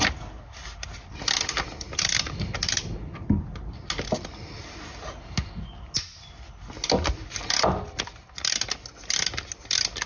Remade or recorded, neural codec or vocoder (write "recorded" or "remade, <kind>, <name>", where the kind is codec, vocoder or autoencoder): recorded